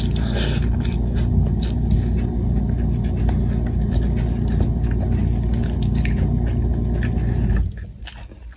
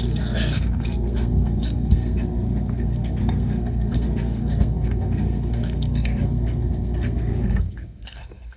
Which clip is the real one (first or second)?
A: first